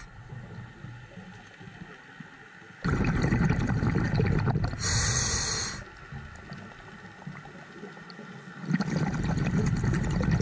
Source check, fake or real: real